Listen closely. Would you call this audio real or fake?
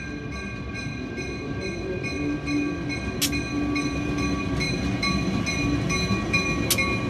real